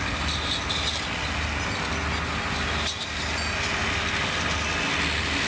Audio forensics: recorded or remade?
recorded